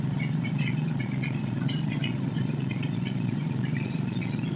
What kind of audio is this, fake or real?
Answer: fake